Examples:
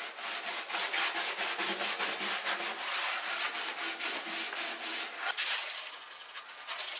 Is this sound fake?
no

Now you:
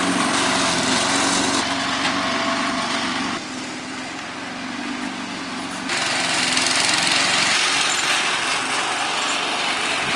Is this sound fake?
no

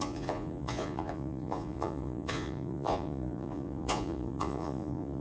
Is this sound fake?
yes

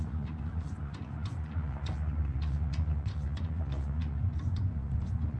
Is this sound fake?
yes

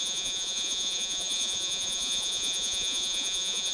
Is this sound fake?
yes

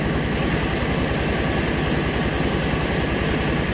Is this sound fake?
no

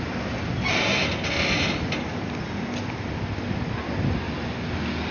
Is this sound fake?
no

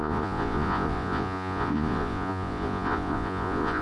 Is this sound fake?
yes